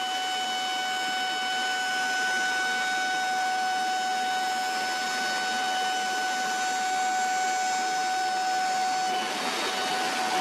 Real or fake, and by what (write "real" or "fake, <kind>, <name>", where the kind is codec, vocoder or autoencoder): real